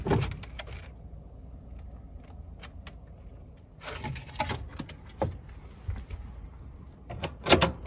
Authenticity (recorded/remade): recorded